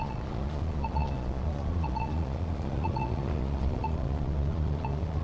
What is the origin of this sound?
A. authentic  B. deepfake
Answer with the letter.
B